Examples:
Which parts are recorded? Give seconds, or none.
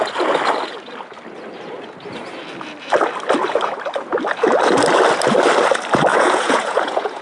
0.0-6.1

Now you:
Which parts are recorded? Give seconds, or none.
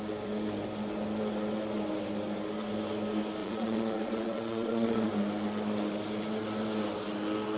0.0-3.4; 5.1-7.6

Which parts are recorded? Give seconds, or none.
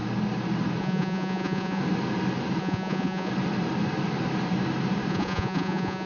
0.0-0.8; 1.8-2.6; 3.3-5.1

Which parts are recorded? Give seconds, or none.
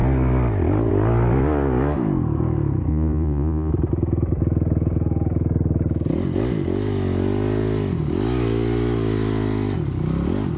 0.0-2.9; 3.7-10.6